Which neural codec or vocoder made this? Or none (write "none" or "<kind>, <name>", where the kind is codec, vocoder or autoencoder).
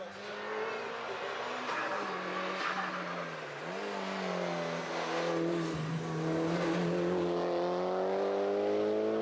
none